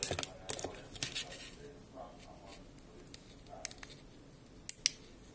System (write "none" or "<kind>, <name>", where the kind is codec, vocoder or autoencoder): none